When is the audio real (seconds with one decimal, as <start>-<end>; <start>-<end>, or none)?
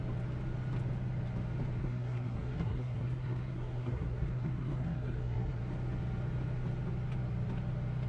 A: 0.0-1.8; 5.6-8.1